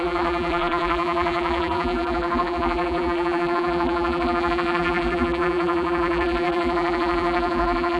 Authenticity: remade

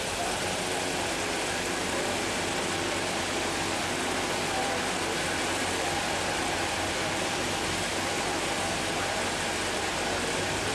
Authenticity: recorded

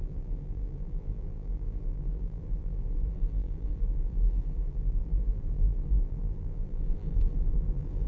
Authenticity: remade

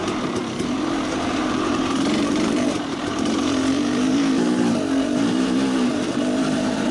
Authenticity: remade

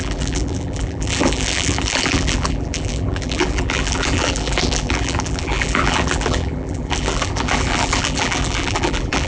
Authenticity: remade